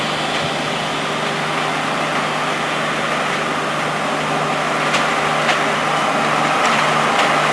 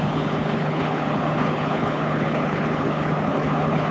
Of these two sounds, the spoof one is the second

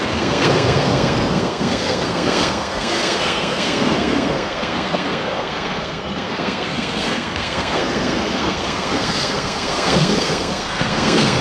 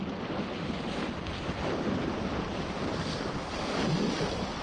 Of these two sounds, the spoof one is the first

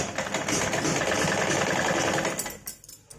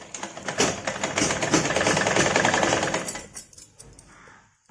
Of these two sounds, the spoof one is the second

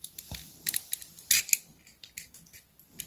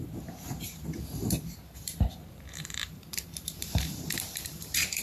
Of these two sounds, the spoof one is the second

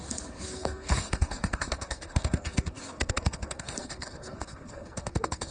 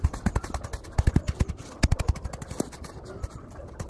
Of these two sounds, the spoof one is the first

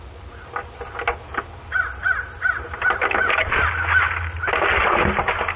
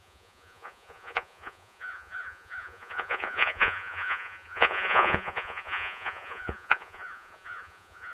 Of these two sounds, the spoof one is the second